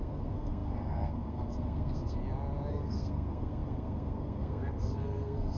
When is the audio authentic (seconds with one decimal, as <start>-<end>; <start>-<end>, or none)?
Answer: 2.2-2.7